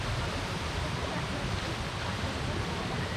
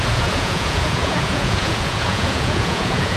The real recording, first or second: first